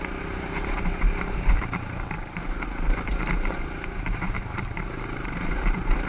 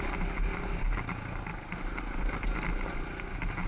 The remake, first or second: first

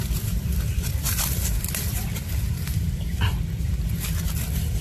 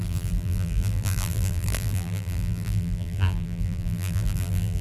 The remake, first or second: second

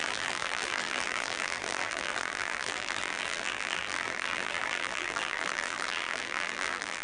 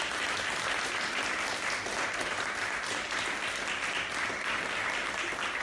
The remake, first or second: first